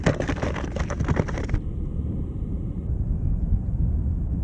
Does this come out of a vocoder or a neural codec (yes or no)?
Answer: no